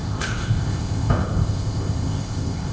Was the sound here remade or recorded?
remade